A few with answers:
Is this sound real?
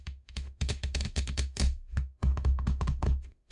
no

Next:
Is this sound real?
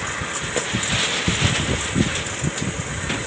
yes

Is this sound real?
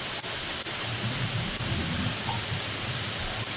yes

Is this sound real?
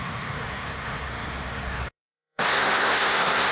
no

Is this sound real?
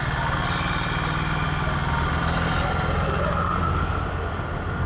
yes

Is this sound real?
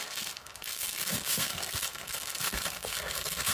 no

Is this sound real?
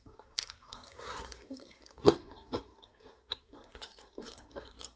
no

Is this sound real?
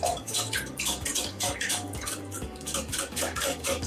no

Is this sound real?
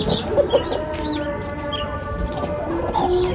yes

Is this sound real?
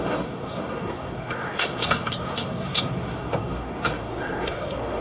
no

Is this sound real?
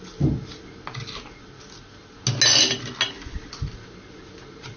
yes